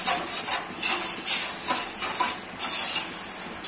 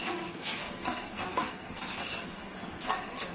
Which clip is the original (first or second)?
first